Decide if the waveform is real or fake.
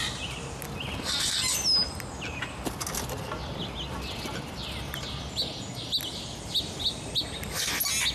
real